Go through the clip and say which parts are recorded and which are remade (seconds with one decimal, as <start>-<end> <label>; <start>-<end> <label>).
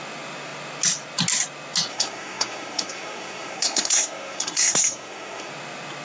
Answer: 0.0-1.9 recorded; 1.9-5.5 remade; 5.5-6.0 recorded